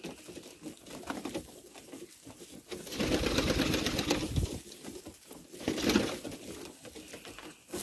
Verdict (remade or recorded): recorded